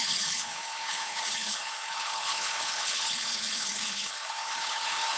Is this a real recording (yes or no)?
no